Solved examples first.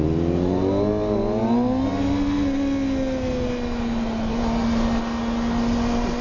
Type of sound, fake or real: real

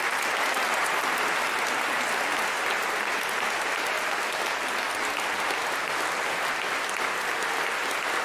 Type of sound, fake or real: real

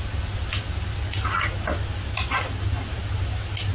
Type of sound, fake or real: real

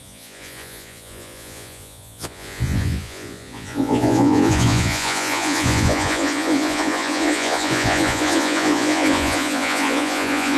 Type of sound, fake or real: fake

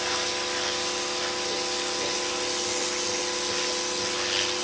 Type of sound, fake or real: real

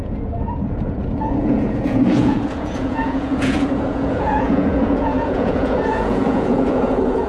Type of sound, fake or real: fake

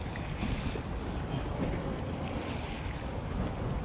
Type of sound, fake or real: real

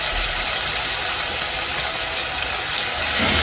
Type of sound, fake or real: real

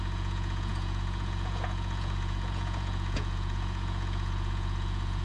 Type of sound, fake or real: fake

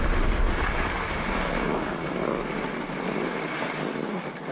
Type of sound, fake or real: real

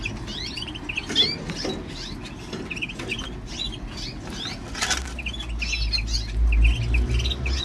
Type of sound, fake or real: real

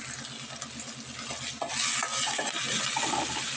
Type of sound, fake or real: real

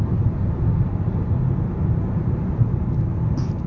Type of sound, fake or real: real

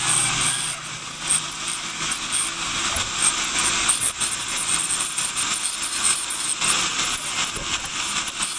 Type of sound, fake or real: real